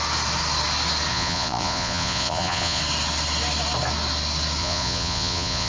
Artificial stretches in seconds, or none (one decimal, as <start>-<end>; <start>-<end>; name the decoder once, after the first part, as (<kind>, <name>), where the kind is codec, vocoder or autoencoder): 1.1-2.8 (vocoder, Vocos); 4.6-5.7